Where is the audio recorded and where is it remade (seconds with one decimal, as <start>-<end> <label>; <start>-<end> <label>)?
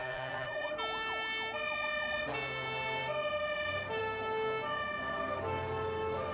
0.0-0.7 remade; 0.7-6.3 recorded